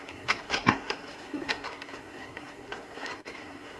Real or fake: fake